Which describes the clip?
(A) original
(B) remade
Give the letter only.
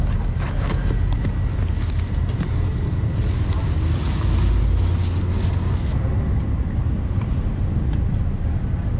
A